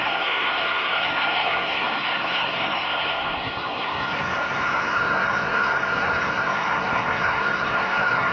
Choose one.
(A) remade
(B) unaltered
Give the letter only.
A